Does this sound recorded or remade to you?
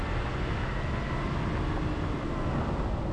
recorded